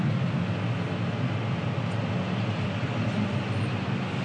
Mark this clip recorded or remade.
recorded